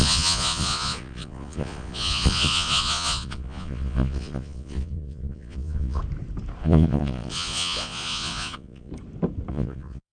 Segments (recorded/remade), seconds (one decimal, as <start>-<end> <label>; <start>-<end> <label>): 0.0-6.0 remade; 6.0-6.6 recorded; 6.6-8.9 remade; 8.9-9.5 recorded; 9.5-10.1 remade